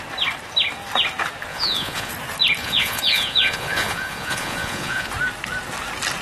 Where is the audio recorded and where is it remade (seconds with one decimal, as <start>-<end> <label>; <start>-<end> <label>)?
0.0-1.5 recorded; 1.5-2.1 remade; 2.1-2.6 recorded; 2.6-5.1 remade; 5.1-6.2 recorded